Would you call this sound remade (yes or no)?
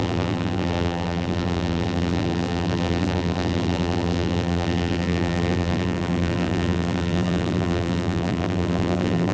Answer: yes